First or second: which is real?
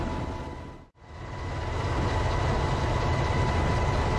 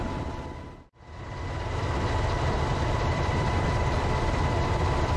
first